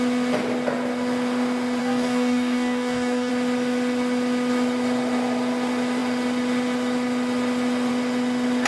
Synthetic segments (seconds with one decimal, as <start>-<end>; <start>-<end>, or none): 1.8-3.3